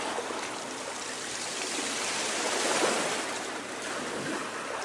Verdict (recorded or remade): recorded